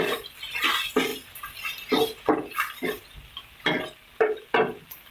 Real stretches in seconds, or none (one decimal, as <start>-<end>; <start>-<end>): 0.0-5.1